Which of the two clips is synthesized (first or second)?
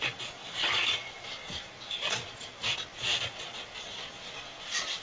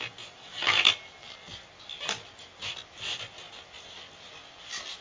first